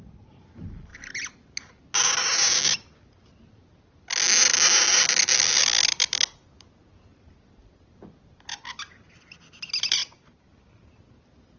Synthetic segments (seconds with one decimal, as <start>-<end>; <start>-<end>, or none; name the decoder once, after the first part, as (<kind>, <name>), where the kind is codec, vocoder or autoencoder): none